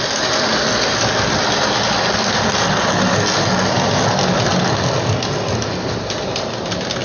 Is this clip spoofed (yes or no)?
no